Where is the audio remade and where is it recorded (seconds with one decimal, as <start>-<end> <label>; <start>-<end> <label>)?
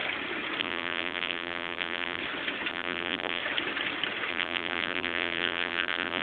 0.0-0.6 recorded; 0.6-2.2 remade; 2.2-2.7 recorded; 2.7-3.4 remade; 3.4-4.3 recorded; 4.3-6.2 remade